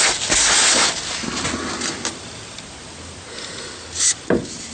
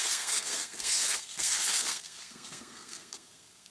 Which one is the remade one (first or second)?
second